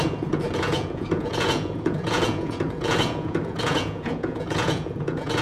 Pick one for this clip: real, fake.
fake